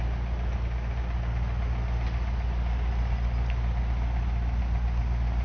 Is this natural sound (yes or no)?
yes